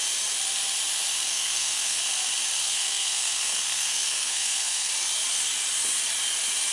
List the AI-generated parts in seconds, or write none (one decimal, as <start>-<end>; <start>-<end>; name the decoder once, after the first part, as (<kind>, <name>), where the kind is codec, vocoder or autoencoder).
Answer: 1.3-2.0 (codec, SNAC); 2.6-4.9